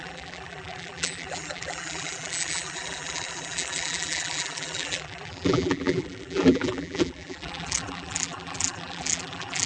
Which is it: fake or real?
fake